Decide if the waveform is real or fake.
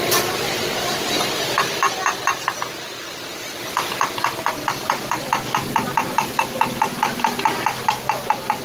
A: real